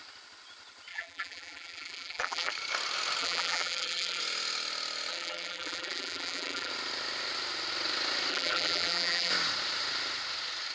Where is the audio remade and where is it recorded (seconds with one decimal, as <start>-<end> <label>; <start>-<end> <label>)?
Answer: 0.0-0.9 recorded; 0.9-2.5 remade; 2.5-3.2 recorded; 3.2-4.2 remade; 4.2-5.1 recorded; 5.1-6.7 remade; 6.7-8.3 recorded; 8.3-9.3 remade; 9.3-10.7 recorded